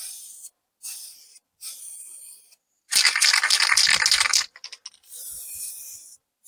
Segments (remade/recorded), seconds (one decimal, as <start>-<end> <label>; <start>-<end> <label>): 0.0-6.5 recorded